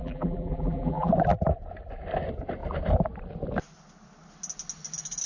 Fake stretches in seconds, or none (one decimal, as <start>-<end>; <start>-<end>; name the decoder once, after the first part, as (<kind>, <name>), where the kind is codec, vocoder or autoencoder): 0.0-1.1 (vocoder, BigVGAN v2)

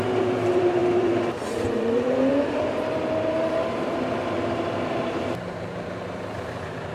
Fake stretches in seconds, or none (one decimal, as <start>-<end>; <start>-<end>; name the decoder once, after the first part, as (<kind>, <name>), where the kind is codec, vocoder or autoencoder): 0.0-6.9 (vocoder, BigVGAN v2)

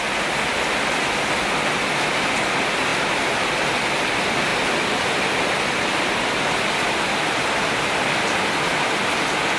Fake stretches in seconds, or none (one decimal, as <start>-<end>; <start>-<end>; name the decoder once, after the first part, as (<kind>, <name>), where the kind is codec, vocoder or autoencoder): none

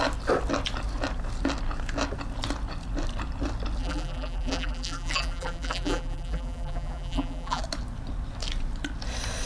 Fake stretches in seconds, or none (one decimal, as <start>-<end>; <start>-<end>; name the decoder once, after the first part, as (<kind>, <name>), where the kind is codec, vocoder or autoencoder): 3.8-7.6 (vocoder, BigVGAN v2)

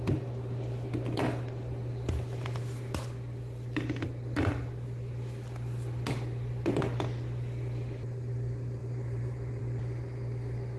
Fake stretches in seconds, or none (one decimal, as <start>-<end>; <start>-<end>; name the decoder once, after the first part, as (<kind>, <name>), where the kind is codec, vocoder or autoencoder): 8.8-9.6 (vocoder, BigVGAN v2)

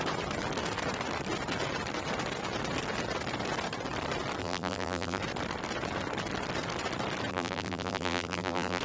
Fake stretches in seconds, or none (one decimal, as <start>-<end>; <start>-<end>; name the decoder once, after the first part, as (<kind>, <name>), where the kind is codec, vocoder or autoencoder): 4.4-5.2 (vocoder, BigVGAN v2); 7.3-8.8

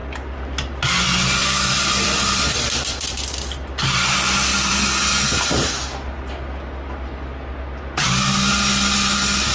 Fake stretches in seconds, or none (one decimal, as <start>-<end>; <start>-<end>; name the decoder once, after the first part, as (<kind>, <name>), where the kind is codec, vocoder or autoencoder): 1.4-3.2 (vocoder, BigVGAN v2); 4.5-5.1

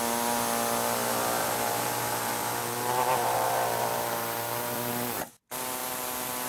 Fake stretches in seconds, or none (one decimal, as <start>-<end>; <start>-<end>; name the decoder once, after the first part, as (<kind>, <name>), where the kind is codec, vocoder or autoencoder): 1.4-5.3 (vocoder, BigVGAN v2)